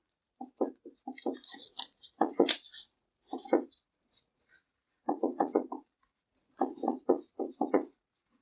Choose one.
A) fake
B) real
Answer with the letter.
A